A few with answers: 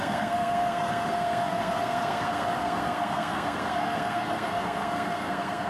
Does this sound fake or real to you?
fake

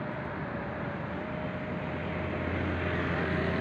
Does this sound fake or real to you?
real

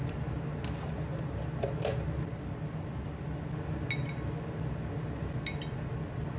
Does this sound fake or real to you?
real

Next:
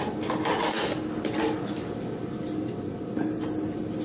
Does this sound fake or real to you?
real